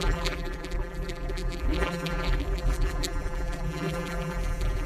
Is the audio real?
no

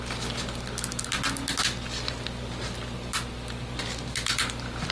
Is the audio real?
yes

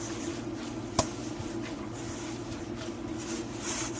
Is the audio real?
yes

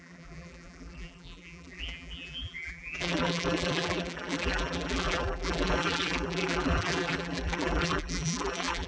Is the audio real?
no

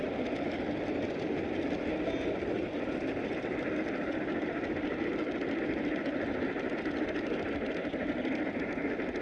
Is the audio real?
yes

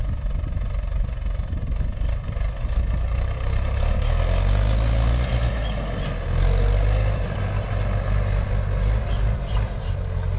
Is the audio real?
yes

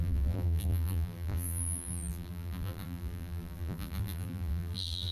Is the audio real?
no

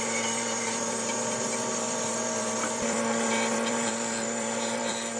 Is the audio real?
no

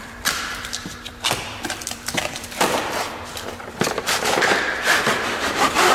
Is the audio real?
no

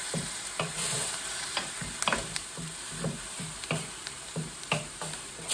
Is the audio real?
no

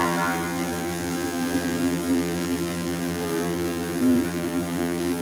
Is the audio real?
no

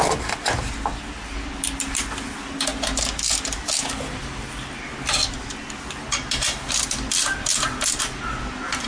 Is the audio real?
yes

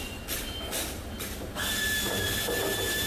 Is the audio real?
yes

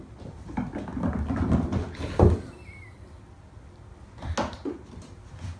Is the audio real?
yes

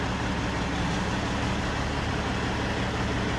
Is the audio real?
yes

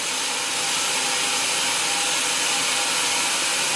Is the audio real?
yes